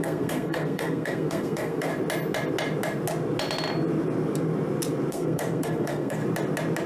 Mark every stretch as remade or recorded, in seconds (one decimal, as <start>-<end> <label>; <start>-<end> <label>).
0.0-1.9 remade; 1.9-5.1 recorded; 5.1-6.2 remade; 6.2-6.9 recorded